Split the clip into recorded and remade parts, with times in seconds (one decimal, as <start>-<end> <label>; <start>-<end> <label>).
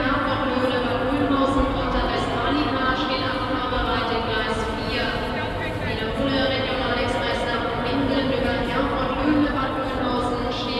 0.0-10.8 recorded